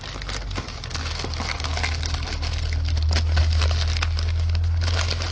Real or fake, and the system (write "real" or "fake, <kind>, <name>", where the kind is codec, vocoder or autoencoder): real